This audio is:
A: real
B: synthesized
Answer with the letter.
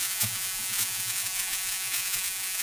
B